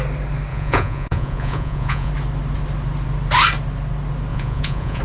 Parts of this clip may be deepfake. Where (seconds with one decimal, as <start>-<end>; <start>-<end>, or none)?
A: 0.5-2.1; 4.3-5.0